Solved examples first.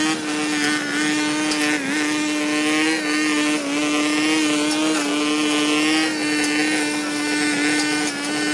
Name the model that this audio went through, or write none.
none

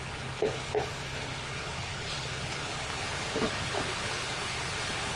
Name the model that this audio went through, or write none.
codec, HILCodec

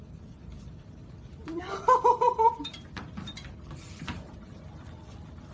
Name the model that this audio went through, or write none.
vocoder, BigVGAN v2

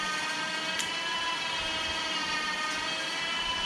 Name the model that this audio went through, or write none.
none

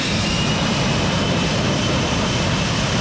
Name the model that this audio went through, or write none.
vocoder, BigVGAN v2